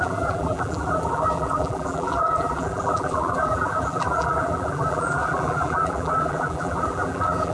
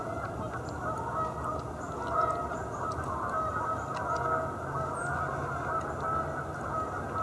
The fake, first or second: first